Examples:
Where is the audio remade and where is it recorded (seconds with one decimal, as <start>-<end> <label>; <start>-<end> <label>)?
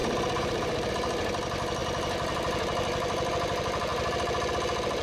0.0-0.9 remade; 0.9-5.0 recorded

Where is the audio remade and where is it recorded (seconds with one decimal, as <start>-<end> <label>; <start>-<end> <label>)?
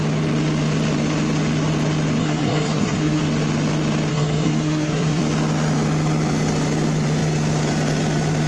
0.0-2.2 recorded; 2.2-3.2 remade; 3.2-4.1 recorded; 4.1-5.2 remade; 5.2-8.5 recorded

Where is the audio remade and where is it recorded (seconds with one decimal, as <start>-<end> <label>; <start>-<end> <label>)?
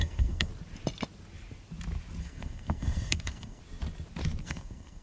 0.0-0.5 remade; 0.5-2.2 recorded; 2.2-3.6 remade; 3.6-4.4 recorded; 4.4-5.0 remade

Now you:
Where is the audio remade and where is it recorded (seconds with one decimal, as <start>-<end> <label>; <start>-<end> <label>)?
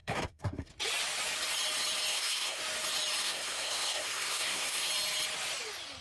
0.0-0.7 remade; 0.7-2.1 recorded; 2.1-2.6 remade; 2.6-3.2 recorded; 3.2-4.9 remade; 4.9-6.0 recorded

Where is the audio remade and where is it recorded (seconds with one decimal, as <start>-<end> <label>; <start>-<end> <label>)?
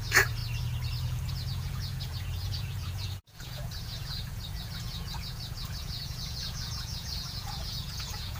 0.0-0.4 remade; 0.4-1.3 recorded; 1.3-8.4 remade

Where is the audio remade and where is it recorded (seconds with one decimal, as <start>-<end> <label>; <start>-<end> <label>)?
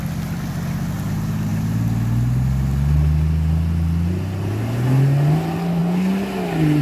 0.0-6.8 recorded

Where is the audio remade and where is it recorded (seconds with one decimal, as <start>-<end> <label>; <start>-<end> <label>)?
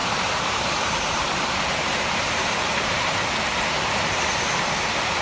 0.0-3.1 remade; 3.1-5.2 recorded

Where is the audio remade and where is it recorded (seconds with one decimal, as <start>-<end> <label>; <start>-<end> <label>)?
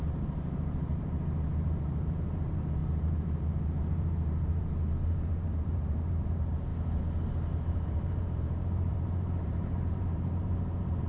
0.0-6.7 remade; 6.7-7.5 recorded; 7.5-11.1 remade